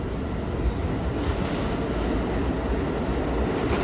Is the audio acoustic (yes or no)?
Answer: yes